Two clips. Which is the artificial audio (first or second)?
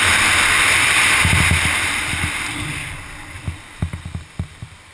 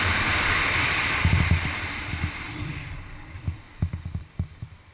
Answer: second